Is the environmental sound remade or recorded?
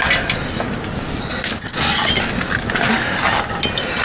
recorded